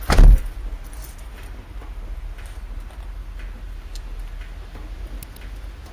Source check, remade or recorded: recorded